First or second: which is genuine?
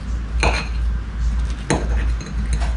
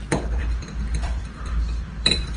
first